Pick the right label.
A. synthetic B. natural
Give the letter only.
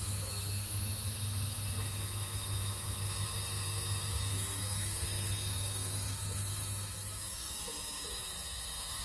A